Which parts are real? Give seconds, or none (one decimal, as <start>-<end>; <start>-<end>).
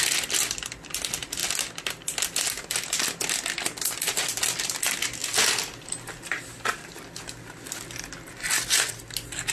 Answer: 0.0-9.5